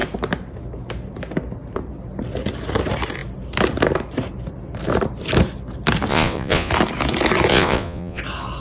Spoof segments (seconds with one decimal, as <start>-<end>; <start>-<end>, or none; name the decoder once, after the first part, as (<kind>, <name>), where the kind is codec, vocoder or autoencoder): 6.1-6.7 (vocoder, Vocos); 7.5-8.2